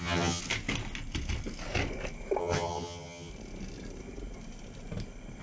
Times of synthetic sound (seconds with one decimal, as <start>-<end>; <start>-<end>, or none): 0.0-0.4; 2.4-3.3